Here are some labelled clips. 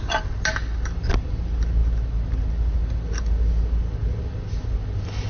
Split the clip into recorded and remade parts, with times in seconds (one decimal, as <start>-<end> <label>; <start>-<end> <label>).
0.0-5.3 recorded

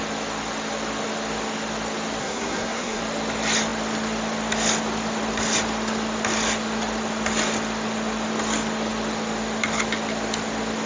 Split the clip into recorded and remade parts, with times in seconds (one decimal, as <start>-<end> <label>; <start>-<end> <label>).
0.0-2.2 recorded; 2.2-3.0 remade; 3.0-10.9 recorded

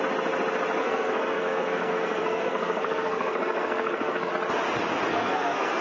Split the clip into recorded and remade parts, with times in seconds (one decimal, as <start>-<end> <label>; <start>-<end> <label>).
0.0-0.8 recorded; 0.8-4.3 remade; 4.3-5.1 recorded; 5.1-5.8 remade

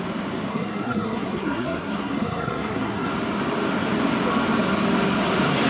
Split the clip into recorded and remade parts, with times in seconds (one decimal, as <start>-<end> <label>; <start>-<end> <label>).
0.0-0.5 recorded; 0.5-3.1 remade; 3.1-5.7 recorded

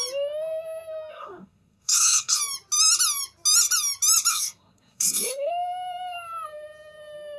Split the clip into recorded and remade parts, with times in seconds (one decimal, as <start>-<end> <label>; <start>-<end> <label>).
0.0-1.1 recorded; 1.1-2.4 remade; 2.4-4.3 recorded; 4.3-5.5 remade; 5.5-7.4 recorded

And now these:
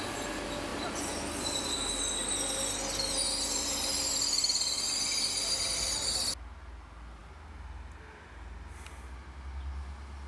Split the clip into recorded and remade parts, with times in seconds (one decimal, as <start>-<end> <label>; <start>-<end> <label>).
0.0-10.3 recorded

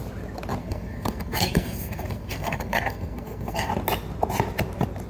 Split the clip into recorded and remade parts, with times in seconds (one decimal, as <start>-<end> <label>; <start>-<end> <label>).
0.0-0.6 recorded; 0.6-3.7 remade; 3.7-5.1 recorded